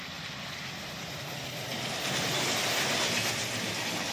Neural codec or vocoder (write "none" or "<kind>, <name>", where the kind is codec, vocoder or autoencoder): none